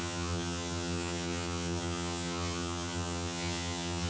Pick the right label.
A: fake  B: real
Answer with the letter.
A